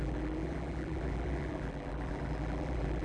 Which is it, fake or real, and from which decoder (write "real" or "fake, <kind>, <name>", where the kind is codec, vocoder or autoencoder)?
fake, vocoder, BigVGAN v2